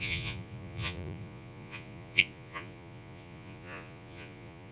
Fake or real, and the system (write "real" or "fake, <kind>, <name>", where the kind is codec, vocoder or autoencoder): fake, vocoder, Vocos